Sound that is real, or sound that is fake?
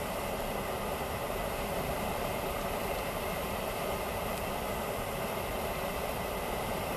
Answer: fake